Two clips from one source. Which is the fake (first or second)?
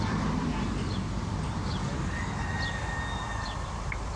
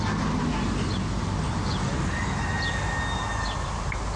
first